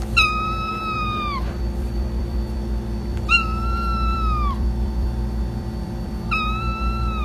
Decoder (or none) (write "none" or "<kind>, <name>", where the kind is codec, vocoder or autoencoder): vocoder, BigVGAN v2